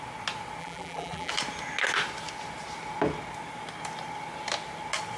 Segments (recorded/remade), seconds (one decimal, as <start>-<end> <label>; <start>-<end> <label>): 0.0-0.6 recorded; 0.6-1.3 remade; 1.3-5.2 recorded